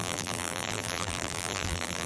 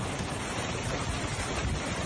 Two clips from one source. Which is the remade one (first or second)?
first